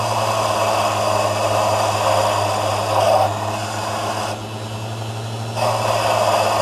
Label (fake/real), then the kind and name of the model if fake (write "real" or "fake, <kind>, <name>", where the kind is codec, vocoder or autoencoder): real